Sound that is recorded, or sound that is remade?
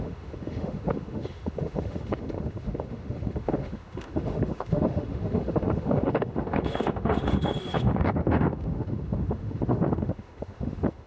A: remade